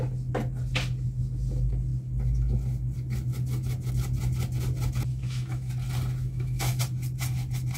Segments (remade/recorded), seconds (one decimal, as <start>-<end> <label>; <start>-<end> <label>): 0.0-5.1 recorded; 5.1-5.7 remade; 5.7-6.2 recorded; 6.2-6.8 remade; 6.8-7.8 recorded